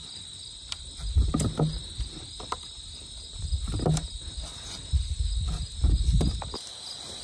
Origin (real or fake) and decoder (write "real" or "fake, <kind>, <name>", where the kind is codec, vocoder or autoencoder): real